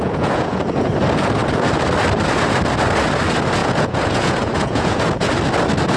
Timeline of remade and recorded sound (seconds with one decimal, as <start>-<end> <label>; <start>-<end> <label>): 0.0-0.9 remade; 0.9-3.6 recorded; 3.6-5.3 remade; 5.3-6.0 recorded